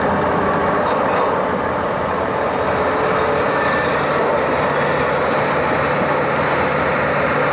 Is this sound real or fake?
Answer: real